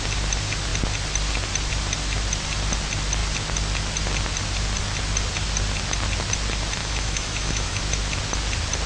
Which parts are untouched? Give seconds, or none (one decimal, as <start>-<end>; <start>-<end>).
0.0-6.8; 7.8-8.9